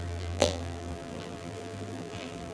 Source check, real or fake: fake